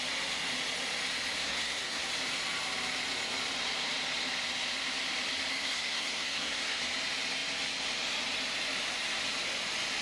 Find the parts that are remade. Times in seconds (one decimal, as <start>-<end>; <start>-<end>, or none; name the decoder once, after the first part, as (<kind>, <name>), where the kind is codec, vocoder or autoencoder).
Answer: 1.4-2.1 (codec, SNAC); 5.5-6.8